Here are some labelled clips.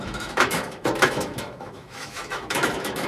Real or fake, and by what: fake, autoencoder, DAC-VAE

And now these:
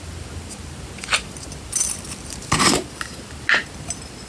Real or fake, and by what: real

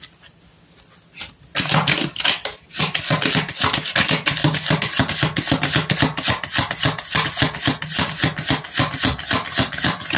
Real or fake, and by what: real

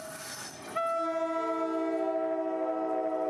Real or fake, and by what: real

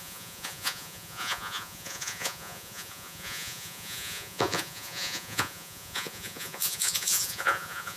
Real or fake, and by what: fake, vocoder, Vocos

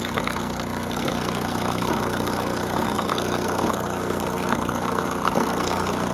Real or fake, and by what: fake, codec, SNAC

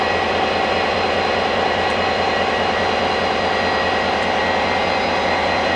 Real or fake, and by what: real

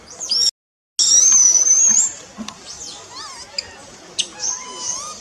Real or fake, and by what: real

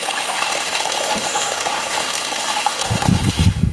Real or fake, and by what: fake, autoencoder, DAC-VAE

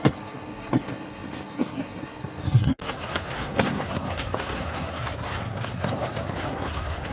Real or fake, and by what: fake, codec, SNAC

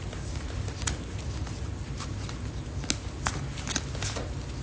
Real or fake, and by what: real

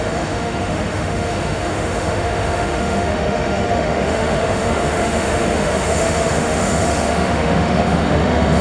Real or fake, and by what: fake, autoencoder, DAC-VAE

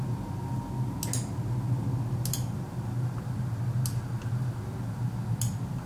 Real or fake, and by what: real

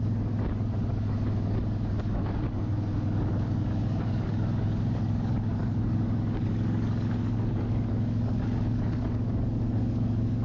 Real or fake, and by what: fake, codec, DAC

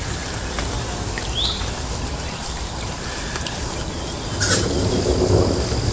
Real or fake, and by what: real